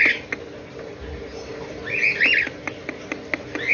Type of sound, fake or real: real